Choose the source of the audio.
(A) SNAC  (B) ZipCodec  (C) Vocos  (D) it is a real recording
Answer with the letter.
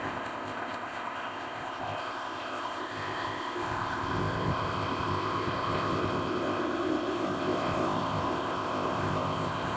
B